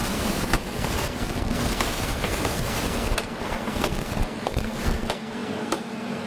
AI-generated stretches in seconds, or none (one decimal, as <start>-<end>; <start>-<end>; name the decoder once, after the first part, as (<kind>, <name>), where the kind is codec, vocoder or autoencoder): 0.0-6.3 (codec, SNAC)